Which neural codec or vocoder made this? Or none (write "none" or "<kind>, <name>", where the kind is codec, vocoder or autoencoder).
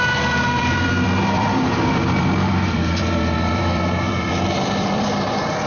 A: vocoder, BigVGAN v2